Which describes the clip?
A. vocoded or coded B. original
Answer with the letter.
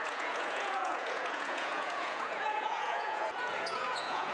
A